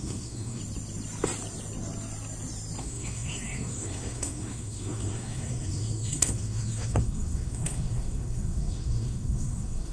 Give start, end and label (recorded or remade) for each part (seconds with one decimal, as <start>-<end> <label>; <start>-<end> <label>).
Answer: 0.0-0.6 remade; 0.6-2.8 recorded; 2.8-9.9 remade